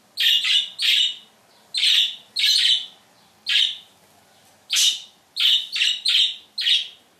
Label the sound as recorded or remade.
recorded